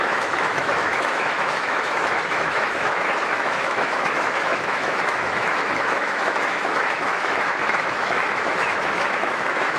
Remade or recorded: remade